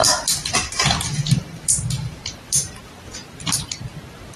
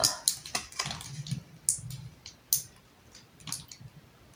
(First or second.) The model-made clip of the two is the first